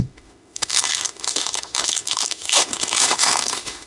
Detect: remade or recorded remade